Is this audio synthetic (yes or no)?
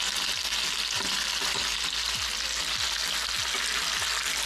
no